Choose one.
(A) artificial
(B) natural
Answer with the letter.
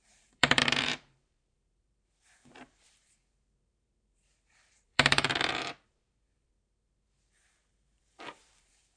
A